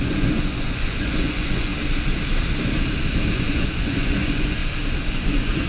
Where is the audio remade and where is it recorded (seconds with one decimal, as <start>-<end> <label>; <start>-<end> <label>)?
0.0-1.7 remade; 1.7-3.3 recorded; 3.3-4.6 remade; 4.6-5.1 recorded; 5.1-5.7 remade